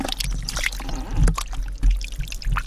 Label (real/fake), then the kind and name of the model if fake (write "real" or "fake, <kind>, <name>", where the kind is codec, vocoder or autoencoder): real